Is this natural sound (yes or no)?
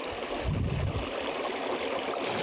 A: yes